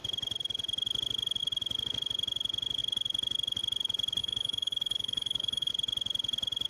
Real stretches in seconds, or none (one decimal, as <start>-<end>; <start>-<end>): 0.0-4.2; 5.7-6.7